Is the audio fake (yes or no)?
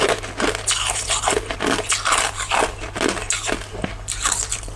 no